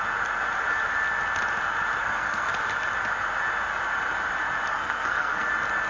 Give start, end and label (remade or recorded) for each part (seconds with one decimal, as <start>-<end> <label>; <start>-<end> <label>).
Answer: 0.0-2.0 recorded; 2.0-2.5 remade; 2.5-4.7 recorded; 4.7-5.5 remade; 5.5-5.9 recorded